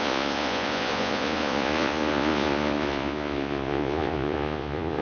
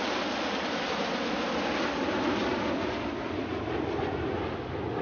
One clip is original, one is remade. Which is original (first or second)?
second